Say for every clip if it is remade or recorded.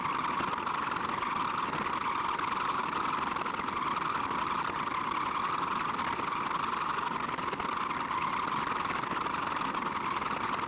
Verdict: recorded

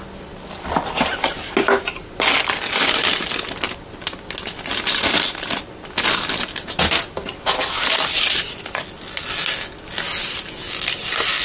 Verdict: recorded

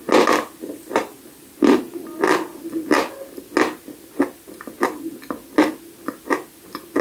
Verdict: recorded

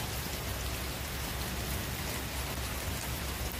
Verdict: recorded